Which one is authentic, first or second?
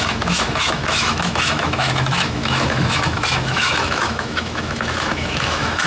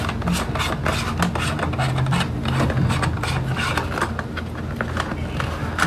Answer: second